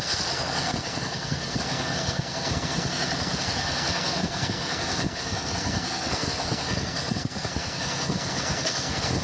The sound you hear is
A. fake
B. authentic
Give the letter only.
A